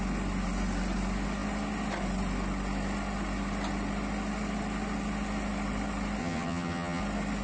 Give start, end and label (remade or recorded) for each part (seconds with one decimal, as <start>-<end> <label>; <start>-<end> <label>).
0.0-6.2 recorded; 6.2-7.0 remade; 7.0-7.4 recorded